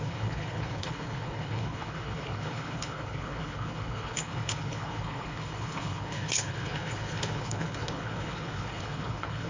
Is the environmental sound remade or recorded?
remade